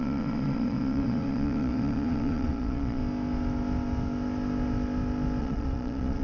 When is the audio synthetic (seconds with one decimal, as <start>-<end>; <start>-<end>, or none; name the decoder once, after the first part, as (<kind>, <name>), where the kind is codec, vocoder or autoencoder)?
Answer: 0.0-3.0 (vocoder, Vocos); 5.4-6.2